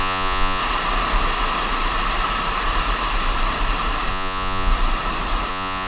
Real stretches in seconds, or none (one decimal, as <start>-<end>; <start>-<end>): 0.6-4.1; 4.7-5.5